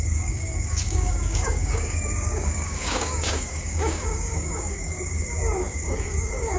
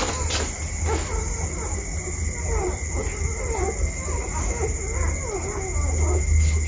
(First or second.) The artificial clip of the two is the first